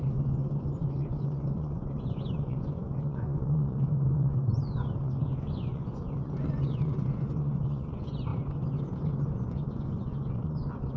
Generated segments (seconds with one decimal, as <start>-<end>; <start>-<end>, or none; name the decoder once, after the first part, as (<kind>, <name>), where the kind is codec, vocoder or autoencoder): 0.0-8.3 (vocoder, Vocos); 9.3-11.0